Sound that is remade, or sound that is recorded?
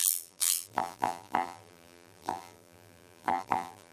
remade